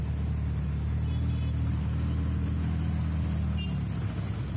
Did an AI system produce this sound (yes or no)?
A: no